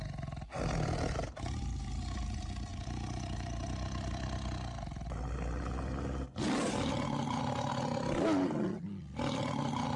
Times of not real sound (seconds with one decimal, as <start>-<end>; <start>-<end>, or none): none